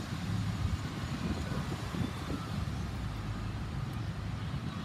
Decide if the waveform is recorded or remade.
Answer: recorded